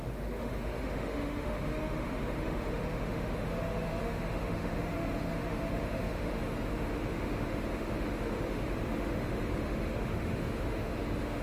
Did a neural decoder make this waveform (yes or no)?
yes